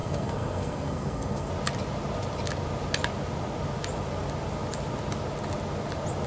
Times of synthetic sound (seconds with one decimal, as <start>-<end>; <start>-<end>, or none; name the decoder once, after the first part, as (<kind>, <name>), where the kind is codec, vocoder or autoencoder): 0.0-1.5 (codec, SNAC)